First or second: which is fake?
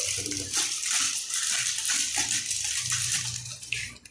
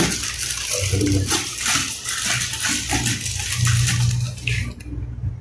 first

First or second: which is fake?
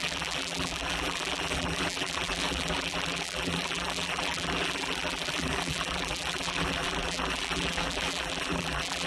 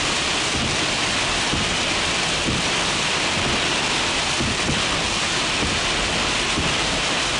first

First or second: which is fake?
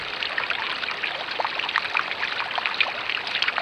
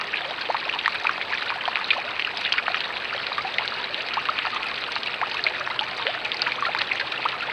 first